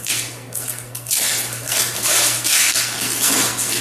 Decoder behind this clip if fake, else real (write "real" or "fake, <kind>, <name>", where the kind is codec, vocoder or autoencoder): fake, codec, SNAC